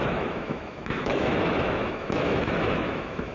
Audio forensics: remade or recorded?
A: remade